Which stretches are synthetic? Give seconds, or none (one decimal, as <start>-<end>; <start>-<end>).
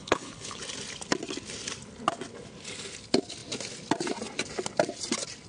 0.0-0.6